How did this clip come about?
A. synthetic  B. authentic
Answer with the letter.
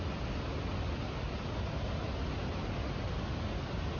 B